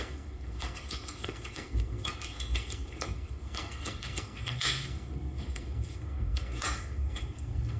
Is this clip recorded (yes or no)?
no